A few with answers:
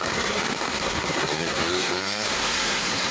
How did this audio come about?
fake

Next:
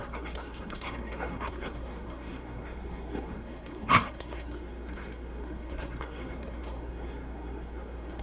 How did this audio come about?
fake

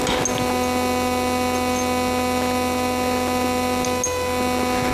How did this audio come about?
real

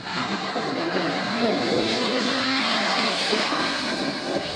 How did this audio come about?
fake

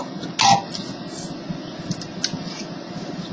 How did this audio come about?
real